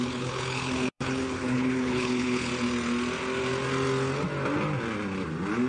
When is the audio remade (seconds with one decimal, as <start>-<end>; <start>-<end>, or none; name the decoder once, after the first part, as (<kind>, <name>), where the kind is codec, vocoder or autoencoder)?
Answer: 0.0-2.5 (codec, HILCodec)